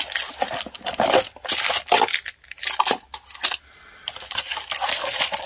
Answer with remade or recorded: recorded